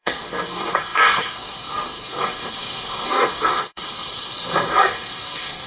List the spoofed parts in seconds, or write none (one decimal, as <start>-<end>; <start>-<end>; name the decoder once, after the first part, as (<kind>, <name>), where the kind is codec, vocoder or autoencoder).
0.0-5.7 (codec, SNAC)